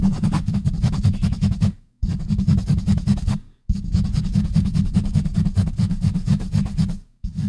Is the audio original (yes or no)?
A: no